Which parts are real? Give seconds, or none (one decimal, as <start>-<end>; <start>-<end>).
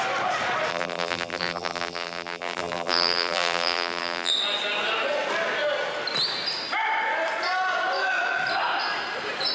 0.0-0.7; 4.3-9.5